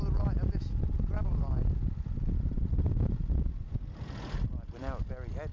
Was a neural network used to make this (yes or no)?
no